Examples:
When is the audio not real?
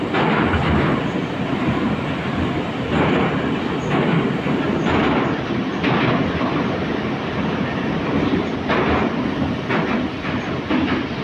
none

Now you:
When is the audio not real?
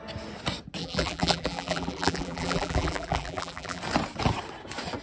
0.8-3.8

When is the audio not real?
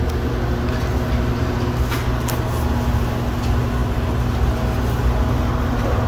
none